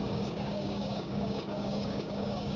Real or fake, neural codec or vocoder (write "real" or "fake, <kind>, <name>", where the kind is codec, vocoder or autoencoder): fake, codec, DAC